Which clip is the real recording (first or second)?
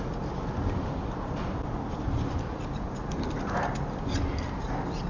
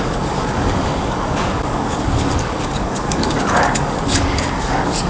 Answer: first